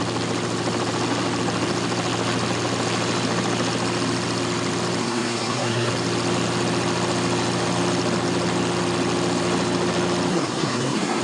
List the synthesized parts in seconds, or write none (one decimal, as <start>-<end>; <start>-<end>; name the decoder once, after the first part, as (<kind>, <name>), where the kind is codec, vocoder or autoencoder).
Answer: 5.0-5.9 (codec, SNAC); 10.3-11.2